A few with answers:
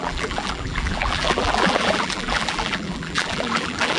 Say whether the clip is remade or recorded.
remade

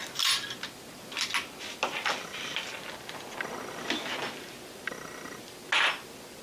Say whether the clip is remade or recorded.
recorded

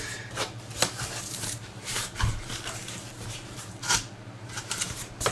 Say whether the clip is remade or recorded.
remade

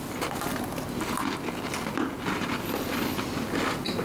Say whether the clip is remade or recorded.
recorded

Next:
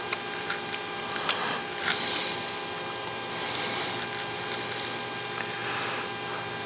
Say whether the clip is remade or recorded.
remade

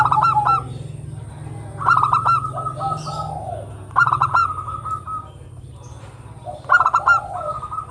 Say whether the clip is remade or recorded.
recorded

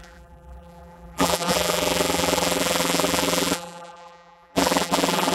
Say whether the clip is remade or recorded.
remade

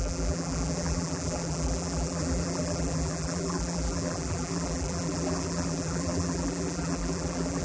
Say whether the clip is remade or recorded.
remade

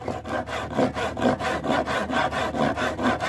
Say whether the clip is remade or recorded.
recorded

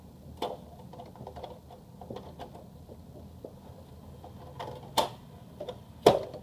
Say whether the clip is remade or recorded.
recorded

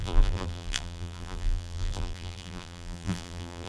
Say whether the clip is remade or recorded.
remade